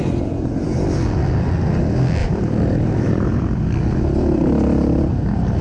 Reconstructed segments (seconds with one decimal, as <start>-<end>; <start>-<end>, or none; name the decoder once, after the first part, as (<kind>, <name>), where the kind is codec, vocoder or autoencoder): 2.2-3.4 (vocoder, BigVGAN v2)